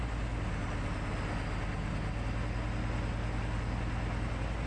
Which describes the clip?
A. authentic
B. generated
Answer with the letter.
A